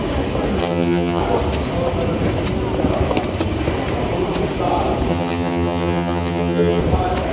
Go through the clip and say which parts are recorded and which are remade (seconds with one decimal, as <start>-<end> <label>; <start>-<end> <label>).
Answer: 0.0-0.6 recorded; 0.6-1.2 remade; 1.2-5.1 recorded; 5.1-6.8 remade; 6.8-7.3 recorded